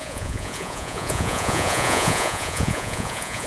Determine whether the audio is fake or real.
fake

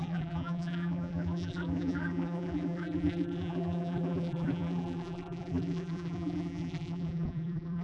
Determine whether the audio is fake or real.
fake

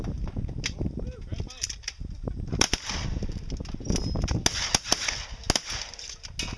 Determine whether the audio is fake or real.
real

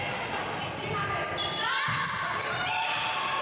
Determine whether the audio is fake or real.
real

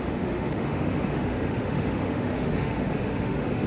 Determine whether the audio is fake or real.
fake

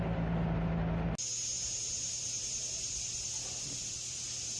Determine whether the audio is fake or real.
real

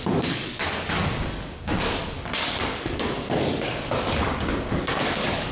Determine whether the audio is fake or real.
fake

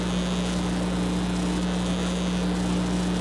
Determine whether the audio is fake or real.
real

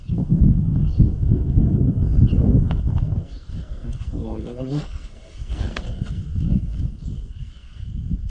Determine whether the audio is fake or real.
fake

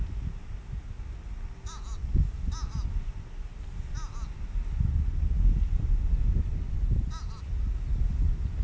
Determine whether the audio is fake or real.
real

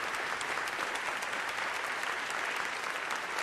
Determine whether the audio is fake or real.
real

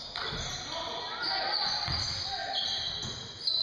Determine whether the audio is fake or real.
real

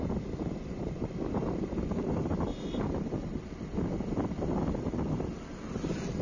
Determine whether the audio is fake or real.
real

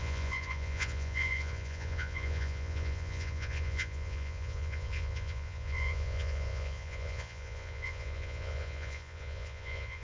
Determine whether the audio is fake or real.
fake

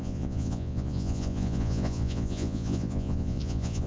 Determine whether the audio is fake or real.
fake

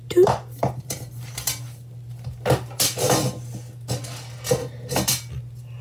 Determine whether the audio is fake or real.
real